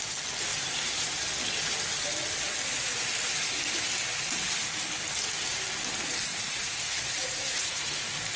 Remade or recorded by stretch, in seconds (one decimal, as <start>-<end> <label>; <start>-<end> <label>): 0.0-6.3 recorded; 6.3-8.0 remade; 8.0-8.4 recorded